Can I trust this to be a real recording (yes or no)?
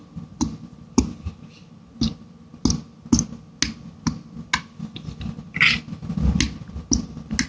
yes